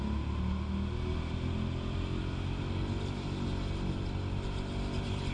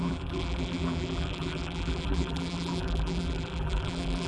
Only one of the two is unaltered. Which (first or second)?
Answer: first